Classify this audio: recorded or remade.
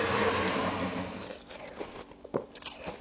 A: recorded